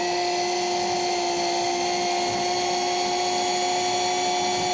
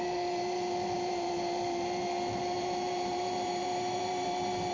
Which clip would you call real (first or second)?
first